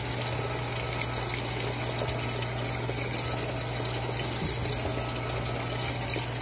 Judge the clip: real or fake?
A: real